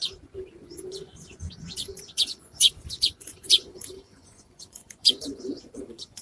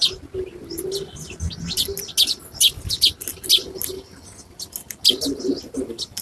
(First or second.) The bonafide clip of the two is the second